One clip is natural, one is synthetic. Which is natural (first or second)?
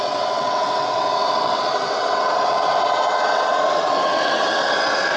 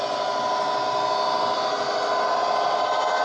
second